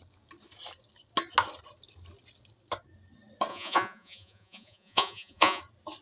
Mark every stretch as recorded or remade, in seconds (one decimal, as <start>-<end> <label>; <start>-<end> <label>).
0.0-3.5 recorded; 3.5-5.6 remade; 5.6-6.0 recorded